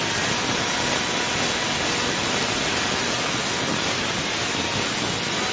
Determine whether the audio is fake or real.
real